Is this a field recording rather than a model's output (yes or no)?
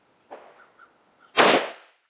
yes